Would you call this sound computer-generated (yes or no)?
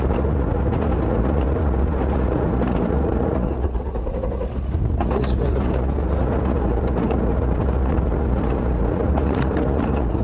yes